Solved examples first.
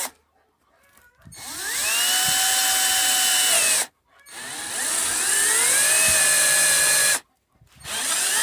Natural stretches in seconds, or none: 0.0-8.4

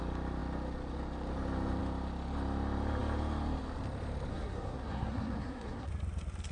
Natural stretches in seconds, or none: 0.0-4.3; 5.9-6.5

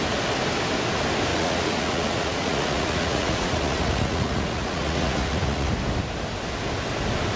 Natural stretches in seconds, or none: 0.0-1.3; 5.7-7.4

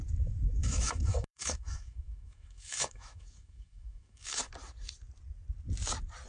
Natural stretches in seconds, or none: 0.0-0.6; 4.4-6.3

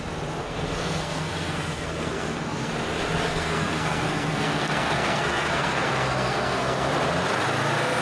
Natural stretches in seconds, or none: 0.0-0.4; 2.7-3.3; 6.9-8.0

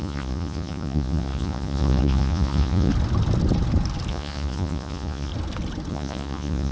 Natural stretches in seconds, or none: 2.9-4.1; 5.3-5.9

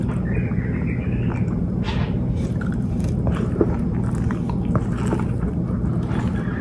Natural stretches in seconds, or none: 0.0-1.6; 3.8-6.6